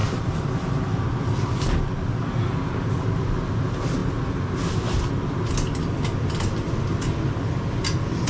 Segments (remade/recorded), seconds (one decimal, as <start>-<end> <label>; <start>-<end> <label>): 0.0-0.8 remade; 0.8-8.3 recorded